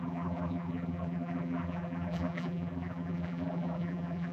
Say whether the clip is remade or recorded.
remade